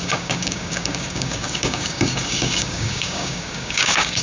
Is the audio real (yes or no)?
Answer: no